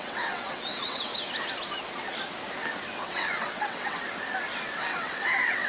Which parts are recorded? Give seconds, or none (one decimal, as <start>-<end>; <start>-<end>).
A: 1.1-3.1; 4.0-4.8